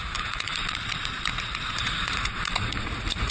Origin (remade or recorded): remade